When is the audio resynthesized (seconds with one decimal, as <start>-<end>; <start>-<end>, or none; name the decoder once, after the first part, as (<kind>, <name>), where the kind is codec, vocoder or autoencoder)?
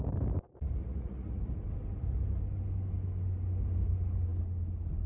0.8-1.4 (vocoder, Vocos)